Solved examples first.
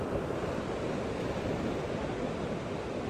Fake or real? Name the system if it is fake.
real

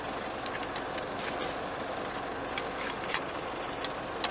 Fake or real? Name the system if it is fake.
real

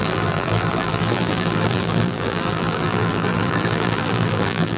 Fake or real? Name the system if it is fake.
fake, vocoder, BigVGAN v2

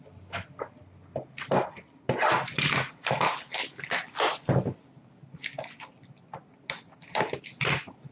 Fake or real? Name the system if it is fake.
real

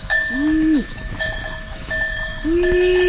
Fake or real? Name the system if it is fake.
fake, autoencoder, DAC-VAE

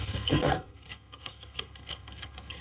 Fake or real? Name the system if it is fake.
fake, codec, SNAC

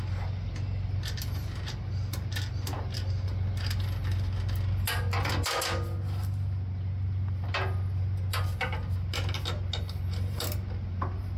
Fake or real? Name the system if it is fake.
real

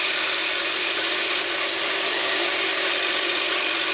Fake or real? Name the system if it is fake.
fake, vocoder, BigVGAN v2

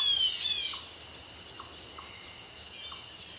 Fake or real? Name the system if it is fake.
real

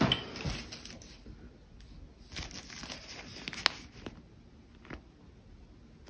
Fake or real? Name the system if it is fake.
real